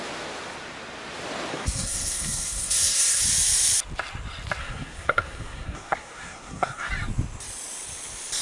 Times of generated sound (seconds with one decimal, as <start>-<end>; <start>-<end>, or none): 1.5-3.2; 4.6-6.9

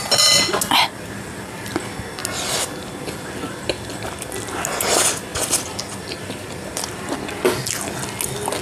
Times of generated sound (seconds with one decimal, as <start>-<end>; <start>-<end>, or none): 5.3-7.0

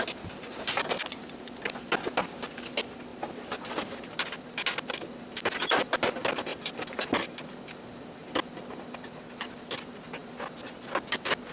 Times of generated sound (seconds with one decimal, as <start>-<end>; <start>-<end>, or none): 6.5-7.4